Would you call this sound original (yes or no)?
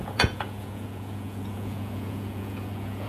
no